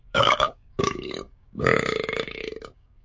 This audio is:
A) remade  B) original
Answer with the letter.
A